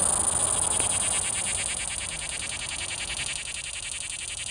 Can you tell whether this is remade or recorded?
recorded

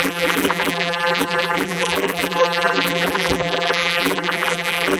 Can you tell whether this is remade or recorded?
remade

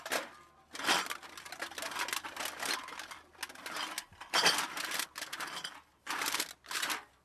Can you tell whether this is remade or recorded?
recorded